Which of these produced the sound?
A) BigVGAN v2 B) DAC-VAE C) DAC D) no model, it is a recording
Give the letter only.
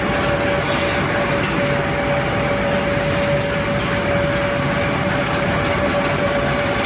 D